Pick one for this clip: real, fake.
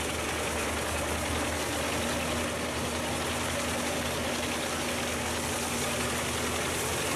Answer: real